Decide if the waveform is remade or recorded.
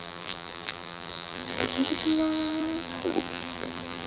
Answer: remade